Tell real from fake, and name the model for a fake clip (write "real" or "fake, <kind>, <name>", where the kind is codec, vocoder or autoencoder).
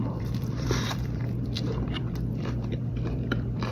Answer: fake, vocoder, BigVGAN v2